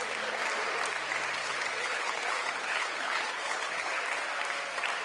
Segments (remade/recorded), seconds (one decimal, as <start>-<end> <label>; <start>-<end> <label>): 0.0-1.4 recorded; 1.4-4.0 remade; 4.0-5.0 recorded